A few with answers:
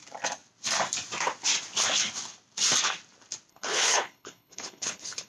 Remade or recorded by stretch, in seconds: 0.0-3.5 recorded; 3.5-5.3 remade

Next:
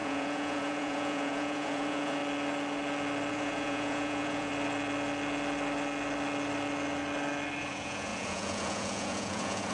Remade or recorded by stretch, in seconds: 0.0-2.2 remade; 2.2-3.3 recorded; 3.3-4.5 remade; 4.5-7.6 recorded; 7.6-9.7 remade

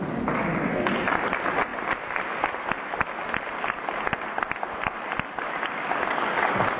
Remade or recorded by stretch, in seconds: 0.0-6.8 recorded